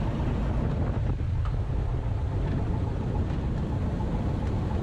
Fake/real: real